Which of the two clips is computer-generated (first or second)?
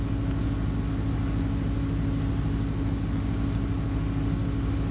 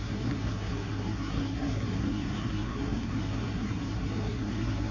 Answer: second